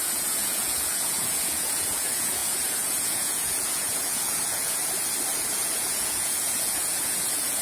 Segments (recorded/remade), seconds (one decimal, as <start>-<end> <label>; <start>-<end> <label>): 0.0-4.8 remade; 4.8-5.5 recorded; 5.5-7.6 remade